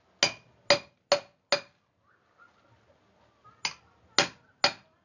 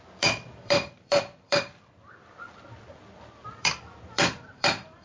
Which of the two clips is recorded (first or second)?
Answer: first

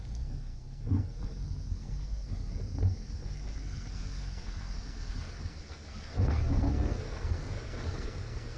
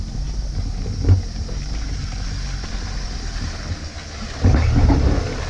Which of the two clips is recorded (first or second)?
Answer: second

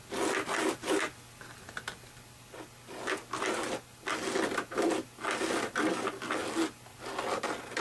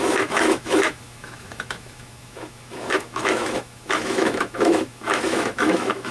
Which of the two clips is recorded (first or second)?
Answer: first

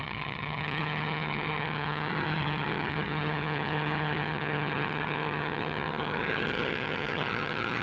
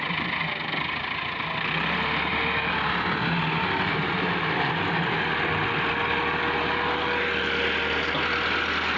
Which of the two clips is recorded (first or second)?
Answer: second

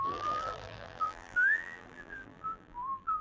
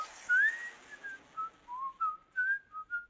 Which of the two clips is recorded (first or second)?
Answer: second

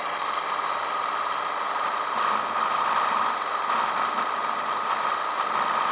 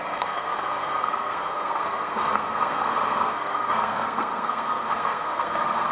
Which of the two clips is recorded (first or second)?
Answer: first